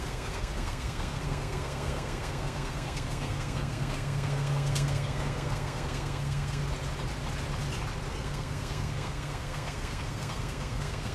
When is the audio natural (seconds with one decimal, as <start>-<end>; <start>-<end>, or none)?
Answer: 6.6-8.1